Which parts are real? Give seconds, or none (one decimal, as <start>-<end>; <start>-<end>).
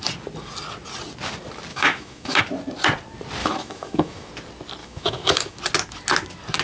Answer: 0.0-1.7; 2.4-3.4; 4.3-4.8; 5.6-6.6